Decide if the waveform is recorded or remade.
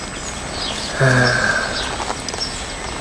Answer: recorded